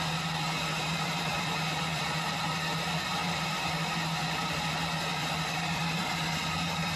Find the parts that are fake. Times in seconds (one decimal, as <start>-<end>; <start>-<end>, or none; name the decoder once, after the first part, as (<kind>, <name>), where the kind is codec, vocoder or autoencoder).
1.3-2.1 (vocoder, BigVGAN v2); 3.2-3.8; 5.1-7.0